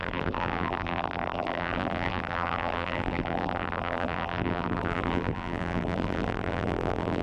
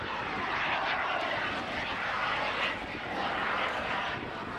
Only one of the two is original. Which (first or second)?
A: second